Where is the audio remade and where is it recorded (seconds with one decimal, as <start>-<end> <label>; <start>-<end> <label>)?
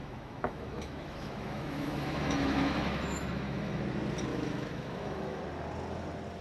0.0-3.8 remade; 3.8-4.3 recorded; 4.3-5.4 remade; 5.4-6.4 recorded